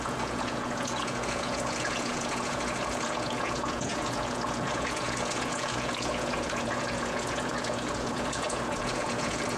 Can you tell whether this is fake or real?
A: fake